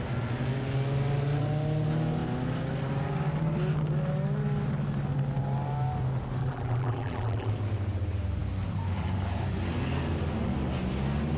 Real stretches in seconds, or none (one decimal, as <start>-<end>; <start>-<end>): 0.0-6.4; 7.5-11.4